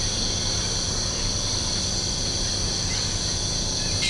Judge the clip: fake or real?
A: real